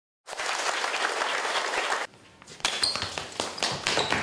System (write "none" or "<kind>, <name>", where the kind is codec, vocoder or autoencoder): none